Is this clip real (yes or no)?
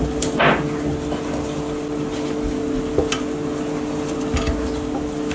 yes